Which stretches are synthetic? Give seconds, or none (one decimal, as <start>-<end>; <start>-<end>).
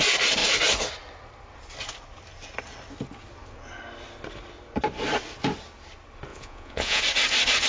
6.3-7.0